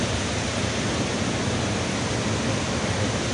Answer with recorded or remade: recorded